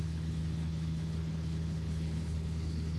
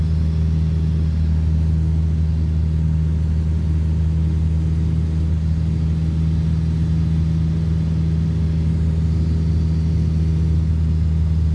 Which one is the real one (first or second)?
second